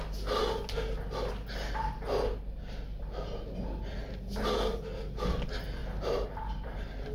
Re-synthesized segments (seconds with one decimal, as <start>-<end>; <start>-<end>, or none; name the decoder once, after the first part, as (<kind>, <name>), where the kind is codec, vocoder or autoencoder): 5.8-7.1 (vocoder, BigVGAN v2)